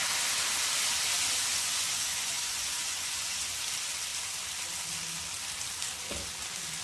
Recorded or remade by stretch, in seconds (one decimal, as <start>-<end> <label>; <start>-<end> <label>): 0.0-1.5 recorded; 1.5-3.6 remade; 3.6-6.8 recorded